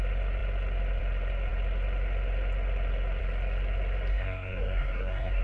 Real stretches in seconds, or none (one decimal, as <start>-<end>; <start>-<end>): 0.0-4.1